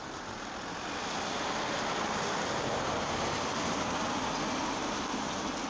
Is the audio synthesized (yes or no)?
no